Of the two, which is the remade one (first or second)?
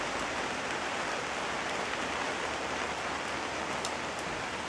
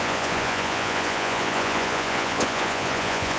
second